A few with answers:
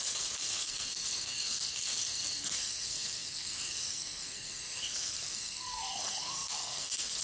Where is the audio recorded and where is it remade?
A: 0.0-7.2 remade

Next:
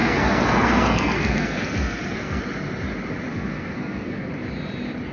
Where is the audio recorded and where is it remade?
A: 0.0-2.4 remade; 2.4-3.3 recorded; 3.3-4.3 remade; 4.3-5.1 recorded

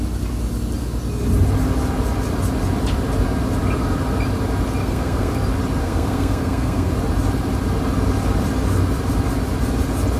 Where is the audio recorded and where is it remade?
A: 0.0-4.8 recorded; 4.8-5.3 remade; 5.3-5.8 recorded; 5.8-6.9 remade; 6.9-10.2 recorded

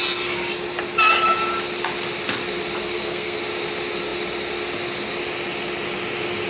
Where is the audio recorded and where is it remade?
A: 0.0-2.8 recorded; 2.8-3.4 remade; 3.4-6.5 recorded